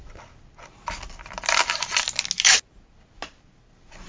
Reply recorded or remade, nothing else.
recorded